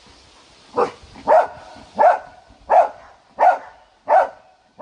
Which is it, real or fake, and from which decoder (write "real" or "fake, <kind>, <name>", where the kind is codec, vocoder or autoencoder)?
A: fake, vocoder, BigVGAN v2